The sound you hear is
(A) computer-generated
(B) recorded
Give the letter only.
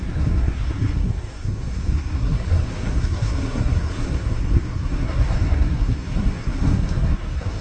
A